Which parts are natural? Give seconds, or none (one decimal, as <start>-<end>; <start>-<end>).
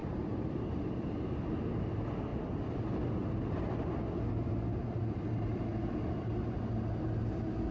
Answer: 1.1-2.3; 6.1-7.7